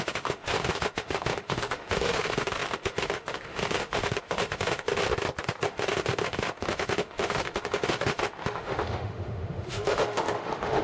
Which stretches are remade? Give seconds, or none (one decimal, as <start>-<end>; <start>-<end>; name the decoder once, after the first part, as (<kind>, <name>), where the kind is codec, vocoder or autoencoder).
0.0-5.0 (autoencoder, DAC-VAE); 5.7-10.8